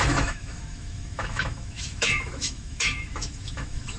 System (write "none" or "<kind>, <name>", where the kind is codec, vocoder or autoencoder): autoencoder, DAC-VAE